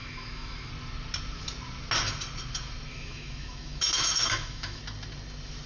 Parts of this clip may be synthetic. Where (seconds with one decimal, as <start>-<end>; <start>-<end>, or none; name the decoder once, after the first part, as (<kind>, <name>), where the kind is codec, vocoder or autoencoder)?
0.0-0.7 (autoencoder, DAC-VAE); 2.9-4.8